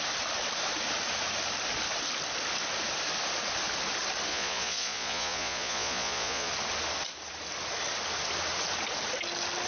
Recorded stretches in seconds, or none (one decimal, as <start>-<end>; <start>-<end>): 0.0-4.3; 6.5-9.7